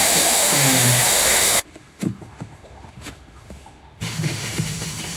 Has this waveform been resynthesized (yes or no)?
yes